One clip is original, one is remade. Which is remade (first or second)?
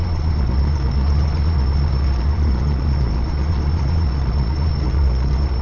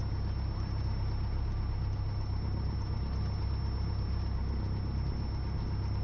first